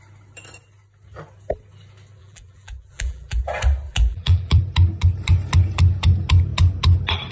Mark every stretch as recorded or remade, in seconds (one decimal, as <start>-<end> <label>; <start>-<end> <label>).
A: 0.0-2.2 recorded; 2.2-3.4 remade; 3.4-3.9 recorded; 3.9-4.6 remade; 4.6-7.3 recorded